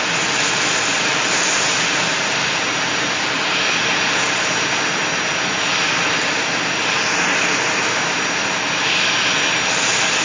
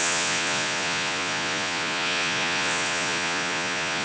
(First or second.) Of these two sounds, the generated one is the second